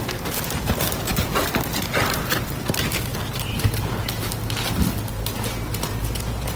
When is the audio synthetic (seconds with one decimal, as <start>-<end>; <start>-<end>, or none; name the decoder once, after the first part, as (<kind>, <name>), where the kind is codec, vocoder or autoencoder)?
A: none